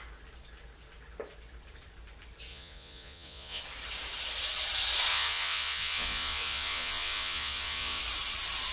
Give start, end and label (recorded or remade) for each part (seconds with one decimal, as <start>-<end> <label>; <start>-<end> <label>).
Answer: 0.0-2.5 recorded; 2.5-3.6 remade; 3.6-5.1 recorded; 5.1-8.0 remade; 8.0-8.7 recorded